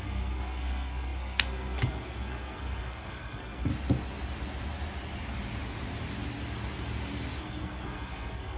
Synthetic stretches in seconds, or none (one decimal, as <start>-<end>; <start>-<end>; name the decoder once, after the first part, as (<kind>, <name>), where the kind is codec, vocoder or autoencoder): 0.0-3.7 (codec, SNAC); 7.4-8.6